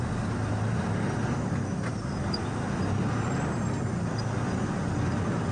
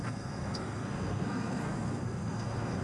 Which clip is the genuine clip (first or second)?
first